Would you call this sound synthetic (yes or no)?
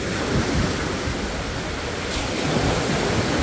no